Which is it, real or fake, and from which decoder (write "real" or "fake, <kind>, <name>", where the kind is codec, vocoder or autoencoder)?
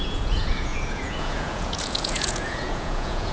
fake, vocoder, Vocos